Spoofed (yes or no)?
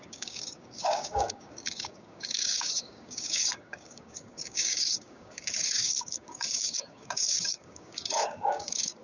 yes